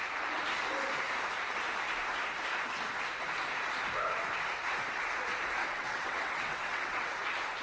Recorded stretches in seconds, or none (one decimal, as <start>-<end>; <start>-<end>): 0.0-5.6; 7.1-7.6